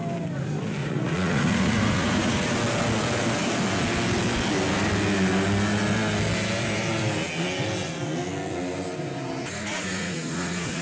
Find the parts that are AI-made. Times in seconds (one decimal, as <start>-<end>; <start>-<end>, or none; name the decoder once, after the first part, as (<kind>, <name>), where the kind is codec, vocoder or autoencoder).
0.8-2.5 (vocoder, Vocos); 9.4-10.8